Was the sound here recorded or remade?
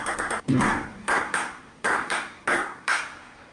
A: remade